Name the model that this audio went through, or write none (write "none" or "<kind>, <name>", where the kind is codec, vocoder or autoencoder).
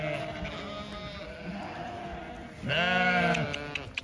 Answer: none